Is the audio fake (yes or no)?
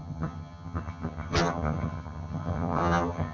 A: yes